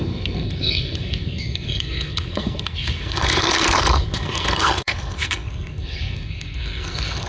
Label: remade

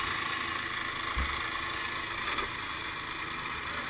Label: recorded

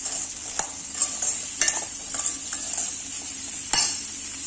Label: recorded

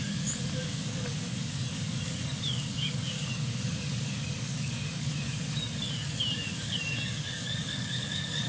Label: remade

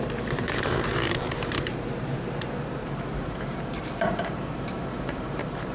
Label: remade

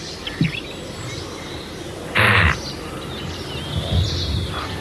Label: recorded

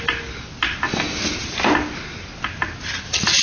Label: recorded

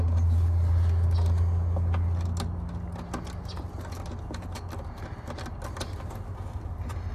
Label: recorded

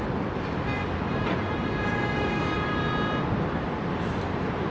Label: recorded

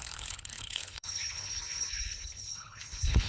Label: remade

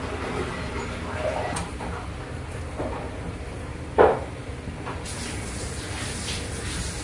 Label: recorded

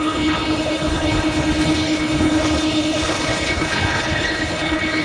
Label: remade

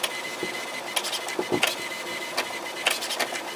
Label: recorded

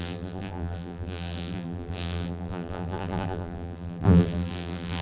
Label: remade